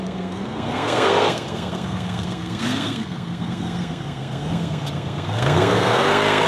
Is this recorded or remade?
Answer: remade